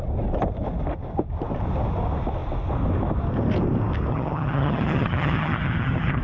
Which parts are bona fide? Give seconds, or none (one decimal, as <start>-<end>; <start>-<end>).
0.0-4.1